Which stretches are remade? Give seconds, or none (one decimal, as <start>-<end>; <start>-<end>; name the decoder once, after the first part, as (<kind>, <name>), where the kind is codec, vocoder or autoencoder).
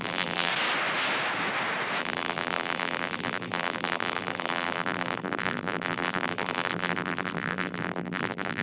0.0-0.5 (vocoder, BigVGAN v2); 2.0-8.6